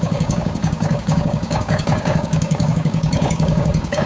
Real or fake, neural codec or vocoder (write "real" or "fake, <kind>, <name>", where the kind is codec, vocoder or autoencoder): fake, codec, DAC